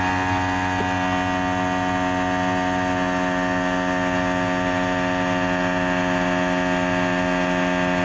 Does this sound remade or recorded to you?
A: recorded